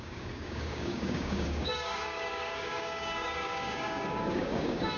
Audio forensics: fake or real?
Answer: fake